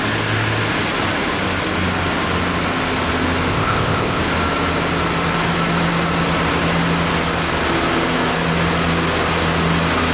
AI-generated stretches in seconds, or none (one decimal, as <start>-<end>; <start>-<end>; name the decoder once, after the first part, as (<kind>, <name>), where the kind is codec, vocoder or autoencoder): 3.5-4.2 (codec, ZipCodec)